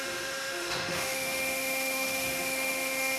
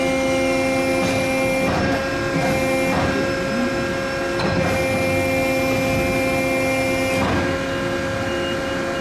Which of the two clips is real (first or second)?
second